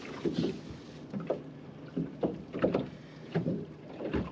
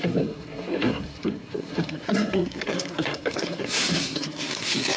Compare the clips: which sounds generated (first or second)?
second